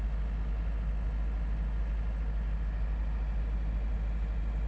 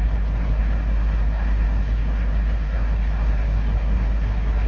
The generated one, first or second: second